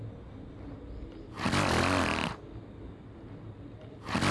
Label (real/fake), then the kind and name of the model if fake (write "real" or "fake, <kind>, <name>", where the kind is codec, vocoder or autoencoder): real